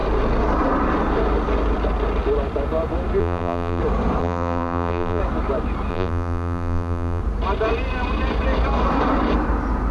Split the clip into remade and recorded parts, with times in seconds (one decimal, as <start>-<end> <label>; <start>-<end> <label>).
0.0-3.2 recorded; 3.2-3.8 remade; 3.8-4.2 recorded; 4.2-5.2 remade; 5.2-5.9 recorded; 5.9-7.2 remade; 7.2-9.9 recorded